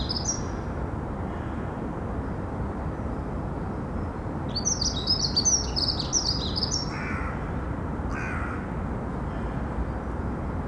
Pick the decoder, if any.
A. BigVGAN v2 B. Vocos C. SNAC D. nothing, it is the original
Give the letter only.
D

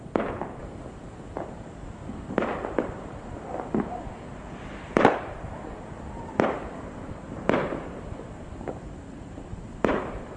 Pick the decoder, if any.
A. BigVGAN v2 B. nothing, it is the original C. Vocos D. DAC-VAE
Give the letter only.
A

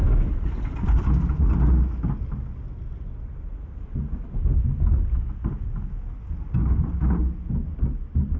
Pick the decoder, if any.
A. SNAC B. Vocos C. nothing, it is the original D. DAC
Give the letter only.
C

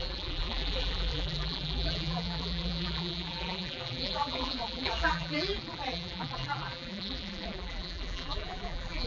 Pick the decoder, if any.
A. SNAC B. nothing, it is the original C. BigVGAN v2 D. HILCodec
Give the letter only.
C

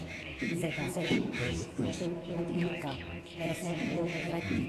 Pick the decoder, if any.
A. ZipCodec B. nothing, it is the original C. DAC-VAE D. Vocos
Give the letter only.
C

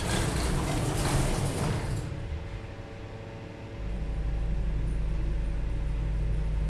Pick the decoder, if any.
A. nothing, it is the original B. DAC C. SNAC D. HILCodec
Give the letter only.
A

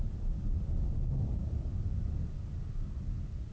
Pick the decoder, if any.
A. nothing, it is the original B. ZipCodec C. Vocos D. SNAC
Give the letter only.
A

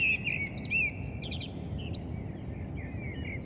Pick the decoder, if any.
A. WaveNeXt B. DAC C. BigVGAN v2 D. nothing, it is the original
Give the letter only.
D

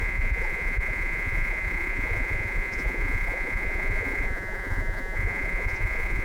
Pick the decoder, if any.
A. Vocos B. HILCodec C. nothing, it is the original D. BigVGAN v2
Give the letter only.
A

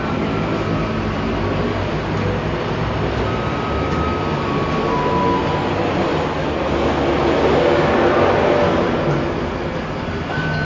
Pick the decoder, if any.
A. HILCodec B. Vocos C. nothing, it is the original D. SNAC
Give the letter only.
C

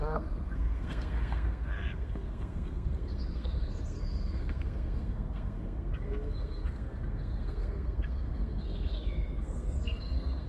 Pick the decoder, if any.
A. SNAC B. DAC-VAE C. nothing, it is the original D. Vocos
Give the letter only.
A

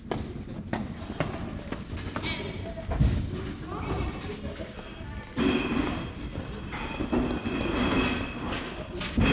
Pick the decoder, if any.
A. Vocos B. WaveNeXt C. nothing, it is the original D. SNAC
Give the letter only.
C